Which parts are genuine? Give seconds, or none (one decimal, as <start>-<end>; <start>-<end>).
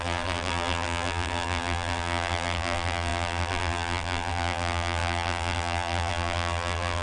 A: none